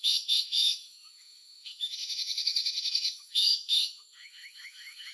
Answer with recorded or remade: remade